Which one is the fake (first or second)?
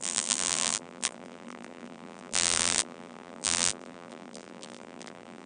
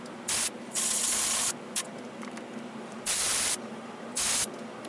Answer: first